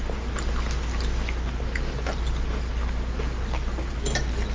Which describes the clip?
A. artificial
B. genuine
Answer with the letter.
B